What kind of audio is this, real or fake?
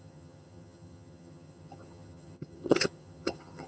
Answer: fake